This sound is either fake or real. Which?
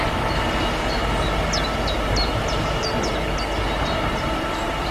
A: real